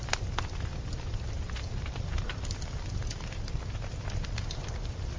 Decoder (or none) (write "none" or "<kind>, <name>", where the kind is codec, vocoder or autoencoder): none